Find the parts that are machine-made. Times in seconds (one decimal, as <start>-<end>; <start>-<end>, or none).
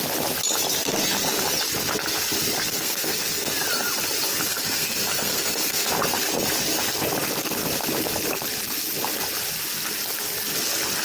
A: 2.7-3.5; 4.5-5.9